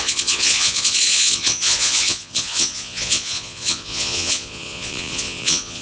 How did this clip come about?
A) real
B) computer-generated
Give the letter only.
B